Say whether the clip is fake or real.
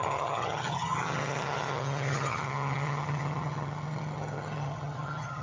fake